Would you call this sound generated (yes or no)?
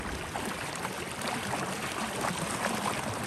no